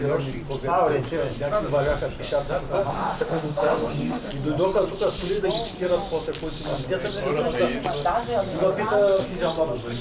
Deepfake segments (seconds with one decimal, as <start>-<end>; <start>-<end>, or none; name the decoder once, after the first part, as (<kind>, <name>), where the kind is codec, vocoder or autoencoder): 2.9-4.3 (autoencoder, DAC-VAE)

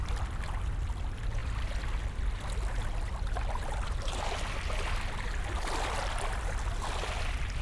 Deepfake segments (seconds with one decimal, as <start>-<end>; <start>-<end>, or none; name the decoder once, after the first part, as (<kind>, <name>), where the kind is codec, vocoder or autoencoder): none

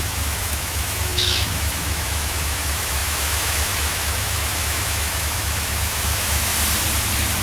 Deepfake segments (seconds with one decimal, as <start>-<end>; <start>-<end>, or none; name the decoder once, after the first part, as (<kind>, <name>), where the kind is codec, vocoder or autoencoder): 0.0-6.5 (autoencoder, DAC-VAE)

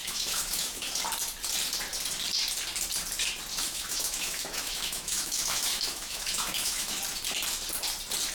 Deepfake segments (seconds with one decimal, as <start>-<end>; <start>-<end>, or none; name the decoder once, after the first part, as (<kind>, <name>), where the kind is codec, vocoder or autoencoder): 0.0-0.9 (autoencoder, DAC-VAE); 3.5-7.0

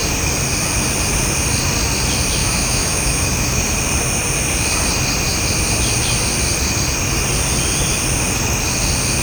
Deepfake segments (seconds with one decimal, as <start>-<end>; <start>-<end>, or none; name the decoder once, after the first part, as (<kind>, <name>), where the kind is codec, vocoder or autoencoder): 2.4-3.6 (autoencoder, DAC-VAE)

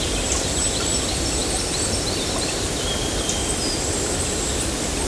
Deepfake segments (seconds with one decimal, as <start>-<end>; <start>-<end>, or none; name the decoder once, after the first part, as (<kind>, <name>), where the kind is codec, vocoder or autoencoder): none